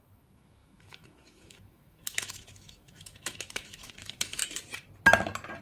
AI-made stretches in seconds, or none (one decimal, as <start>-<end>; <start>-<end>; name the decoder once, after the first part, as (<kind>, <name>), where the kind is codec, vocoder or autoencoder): 0.0-4.4 (autoencoder, DAC-VAE)